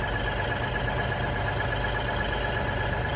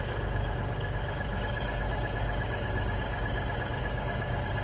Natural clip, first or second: first